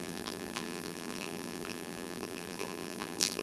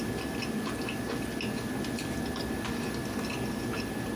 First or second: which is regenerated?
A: first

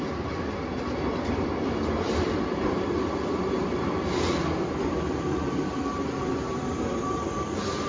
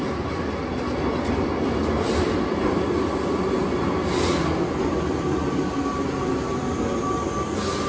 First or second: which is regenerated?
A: first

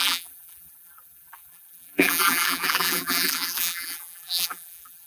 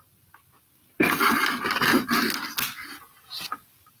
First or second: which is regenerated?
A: first